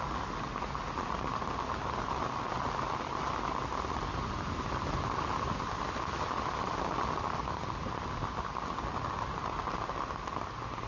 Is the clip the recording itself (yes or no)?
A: yes